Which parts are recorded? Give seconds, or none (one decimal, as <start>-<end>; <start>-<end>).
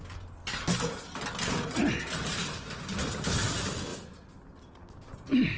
0.0-5.6